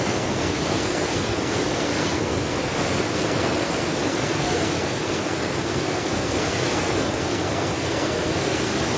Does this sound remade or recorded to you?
remade